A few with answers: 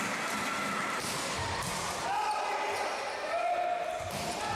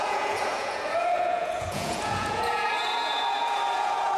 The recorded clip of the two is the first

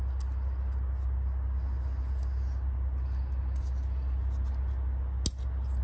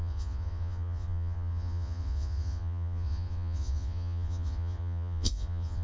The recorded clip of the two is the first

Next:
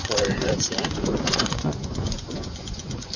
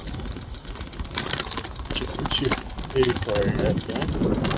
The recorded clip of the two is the second